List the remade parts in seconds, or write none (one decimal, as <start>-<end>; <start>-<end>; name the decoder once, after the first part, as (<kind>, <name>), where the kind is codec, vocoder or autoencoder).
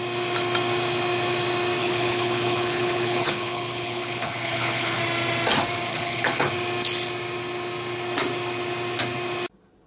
1.8-5.0 (codec, HILCodec); 5.9-6.5